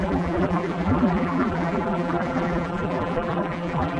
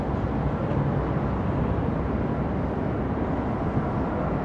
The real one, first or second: second